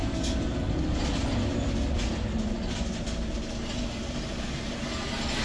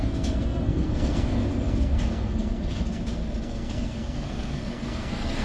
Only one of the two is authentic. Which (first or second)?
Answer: first